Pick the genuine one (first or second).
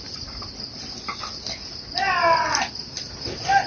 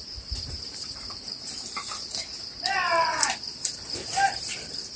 first